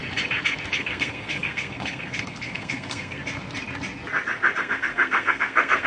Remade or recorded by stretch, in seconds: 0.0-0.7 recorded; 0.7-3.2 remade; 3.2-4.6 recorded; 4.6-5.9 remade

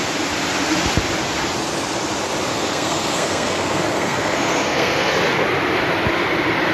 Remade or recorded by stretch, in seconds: 0.0-2.5 recorded; 2.5-5.1 remade; 5.1-6.7 recorded

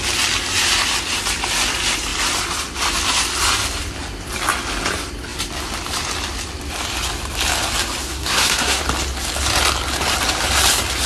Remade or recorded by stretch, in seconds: 0.0-8.0 recorded; 8.0-8.8 remade; 8.8-11.1 recorded